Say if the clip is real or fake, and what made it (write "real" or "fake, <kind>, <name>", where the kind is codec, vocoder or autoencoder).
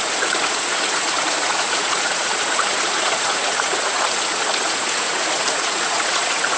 fake, vocoder, Vocos